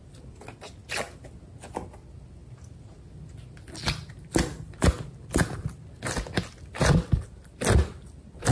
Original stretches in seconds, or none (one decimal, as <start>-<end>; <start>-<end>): 0.0-8.5